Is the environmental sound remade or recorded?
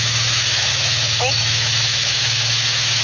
remade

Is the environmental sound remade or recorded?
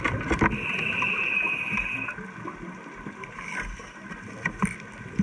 recorded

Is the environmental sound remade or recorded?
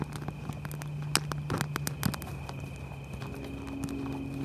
recorded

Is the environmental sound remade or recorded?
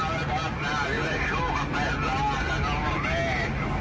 recorded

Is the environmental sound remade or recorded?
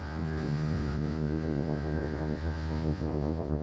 remade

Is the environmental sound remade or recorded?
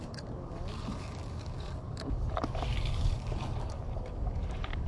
remade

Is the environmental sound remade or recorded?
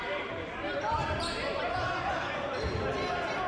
recorded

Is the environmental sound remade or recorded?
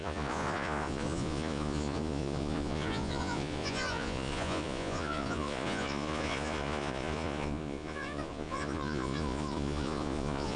remade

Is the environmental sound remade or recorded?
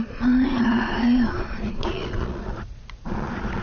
remade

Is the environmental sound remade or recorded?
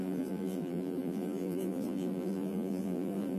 remade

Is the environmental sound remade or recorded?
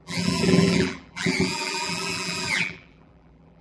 remade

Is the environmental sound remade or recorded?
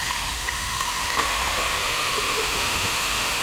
remade